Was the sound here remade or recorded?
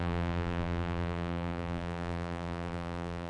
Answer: remade